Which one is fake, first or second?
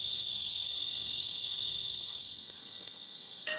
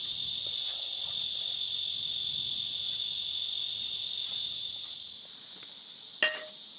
first